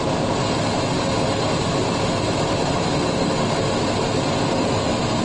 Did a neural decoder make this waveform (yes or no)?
no